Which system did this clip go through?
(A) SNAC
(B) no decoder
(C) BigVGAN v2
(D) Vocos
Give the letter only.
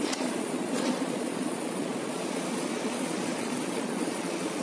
D